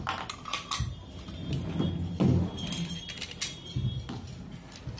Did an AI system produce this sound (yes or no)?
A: no